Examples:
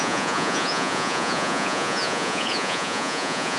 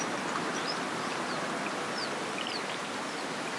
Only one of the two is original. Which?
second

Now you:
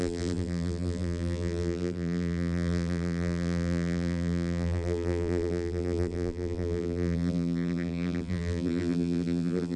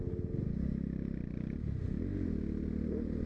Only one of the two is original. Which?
second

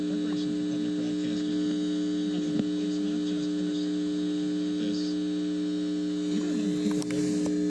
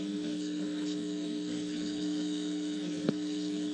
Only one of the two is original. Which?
first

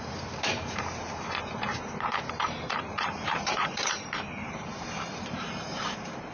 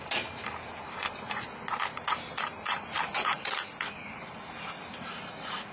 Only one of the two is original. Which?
second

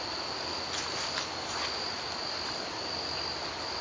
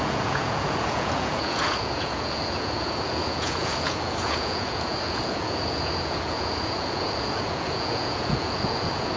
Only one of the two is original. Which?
first